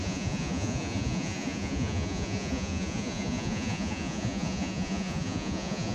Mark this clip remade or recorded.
remade